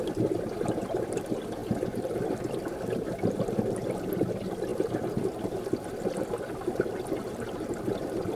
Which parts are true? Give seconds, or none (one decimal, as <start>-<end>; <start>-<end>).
0.0-8.3